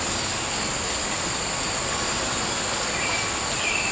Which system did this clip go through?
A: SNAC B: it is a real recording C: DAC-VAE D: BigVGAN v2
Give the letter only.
B